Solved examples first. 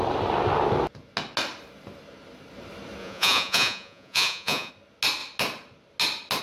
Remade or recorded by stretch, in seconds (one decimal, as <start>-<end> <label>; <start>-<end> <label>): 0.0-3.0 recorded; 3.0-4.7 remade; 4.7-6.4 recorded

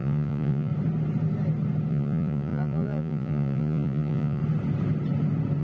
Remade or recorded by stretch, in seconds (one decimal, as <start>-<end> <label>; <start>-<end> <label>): 0.0-0.7 remade; 0.7-1.9 recorded; 1.9-4.4 remade; 4.4-5.6 recorded

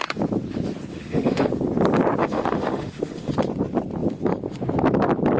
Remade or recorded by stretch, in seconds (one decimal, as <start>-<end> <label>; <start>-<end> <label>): 0.0-0.9 recorded; 0.9-1.5 remade; 1.5-2.2 recorded; 2.2-3.3 remade; 3.3-5.4 recorded

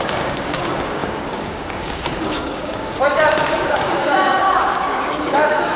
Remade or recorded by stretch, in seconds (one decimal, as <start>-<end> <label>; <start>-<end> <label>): 0.0-5.8 remade

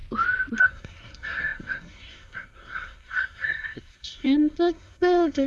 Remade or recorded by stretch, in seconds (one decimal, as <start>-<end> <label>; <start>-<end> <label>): 0.0-0.6 recorded; 0.6-5.5 remade

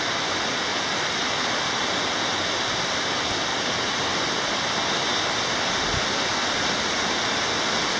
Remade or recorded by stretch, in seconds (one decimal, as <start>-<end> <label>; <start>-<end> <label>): 0.0-8.0 recorded